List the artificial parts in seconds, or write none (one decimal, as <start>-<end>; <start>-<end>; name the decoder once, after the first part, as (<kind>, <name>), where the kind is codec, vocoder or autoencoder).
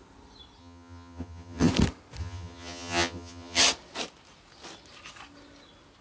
0.6-1.7 (vocoder, HiFi-GAN); 2.2-3.6